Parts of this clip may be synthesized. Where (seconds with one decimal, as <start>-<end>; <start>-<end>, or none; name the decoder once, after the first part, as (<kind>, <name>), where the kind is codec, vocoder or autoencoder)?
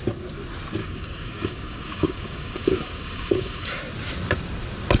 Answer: 0.8-3.8 (codec, DAC)